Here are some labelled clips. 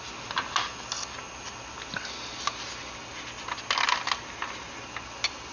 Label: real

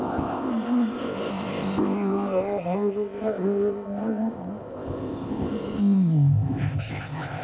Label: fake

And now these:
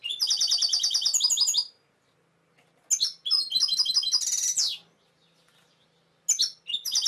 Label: real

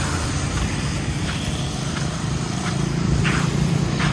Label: real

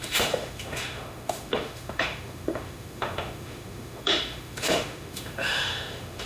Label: fake